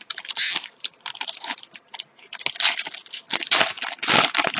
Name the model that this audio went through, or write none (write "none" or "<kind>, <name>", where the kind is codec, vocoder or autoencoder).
none